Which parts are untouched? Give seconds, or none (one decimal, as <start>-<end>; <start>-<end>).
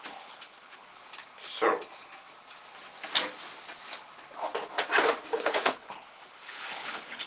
0.9-5.3